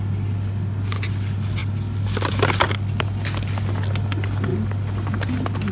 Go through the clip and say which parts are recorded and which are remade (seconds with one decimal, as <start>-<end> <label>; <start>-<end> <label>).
0.0-5.7 recorded